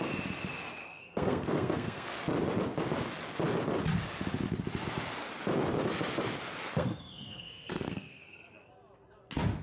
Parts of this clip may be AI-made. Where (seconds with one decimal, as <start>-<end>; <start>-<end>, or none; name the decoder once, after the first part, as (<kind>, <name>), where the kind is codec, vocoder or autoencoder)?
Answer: 0.8-2.2 (codec, SNAC); 6.6-8.7